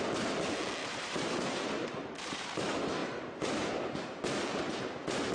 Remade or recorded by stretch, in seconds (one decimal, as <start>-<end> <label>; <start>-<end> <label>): 0.0-0.8 recorded; 0.8-2.6 remade; 2.6-3.0 recorded; 3.0-3.7 remade; 3.7-4.5 recorded; 4.5-5.3 remade